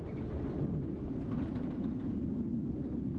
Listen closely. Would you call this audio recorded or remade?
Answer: recorded